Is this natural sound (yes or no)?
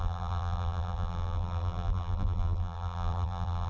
no